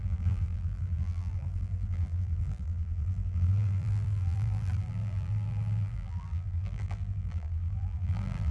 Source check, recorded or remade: remade